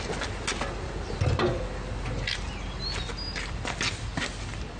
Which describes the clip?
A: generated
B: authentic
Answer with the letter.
B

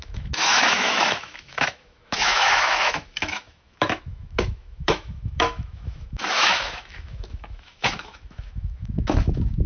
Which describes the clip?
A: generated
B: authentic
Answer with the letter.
A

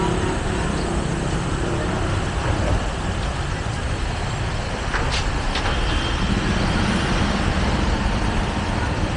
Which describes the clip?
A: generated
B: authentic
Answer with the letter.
B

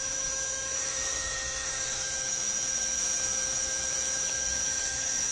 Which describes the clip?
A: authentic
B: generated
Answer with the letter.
B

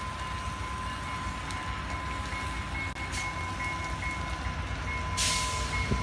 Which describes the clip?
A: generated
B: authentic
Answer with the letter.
B